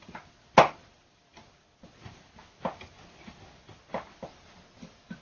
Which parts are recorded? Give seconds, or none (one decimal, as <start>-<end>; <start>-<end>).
0.0-5.2

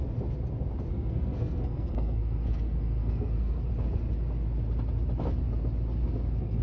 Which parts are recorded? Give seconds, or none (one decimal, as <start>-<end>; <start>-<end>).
0.0-0.9; 3.7-6.0